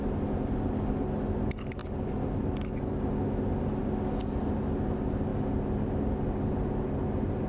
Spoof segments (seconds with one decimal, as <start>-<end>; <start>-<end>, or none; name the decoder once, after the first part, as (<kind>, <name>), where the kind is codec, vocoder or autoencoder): none